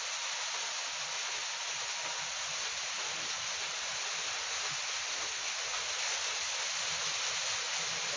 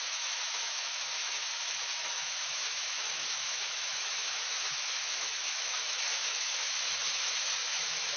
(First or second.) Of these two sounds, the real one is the first